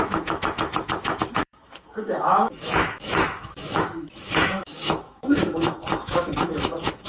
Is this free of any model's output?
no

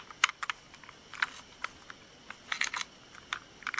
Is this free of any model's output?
yes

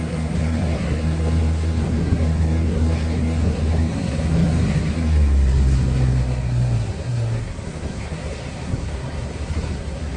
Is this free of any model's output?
no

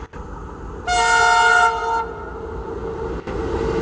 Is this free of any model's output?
yes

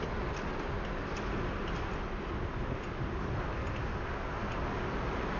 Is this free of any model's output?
yes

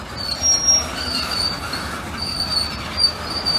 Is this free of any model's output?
yes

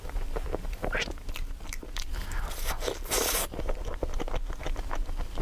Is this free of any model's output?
yes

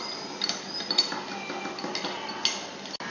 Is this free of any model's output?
yes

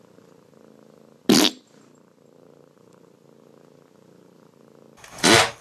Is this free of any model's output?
yes